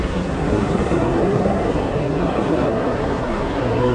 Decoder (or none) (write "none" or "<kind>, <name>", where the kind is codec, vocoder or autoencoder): codec, SNAC